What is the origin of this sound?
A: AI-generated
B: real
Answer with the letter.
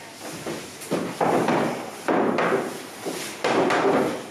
B